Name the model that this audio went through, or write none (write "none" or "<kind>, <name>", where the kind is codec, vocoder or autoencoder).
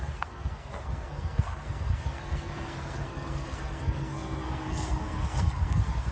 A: codec, SNAC